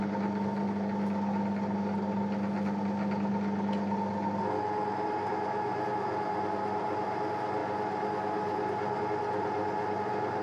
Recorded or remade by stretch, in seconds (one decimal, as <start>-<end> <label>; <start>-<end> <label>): 0.0-10.4 recorded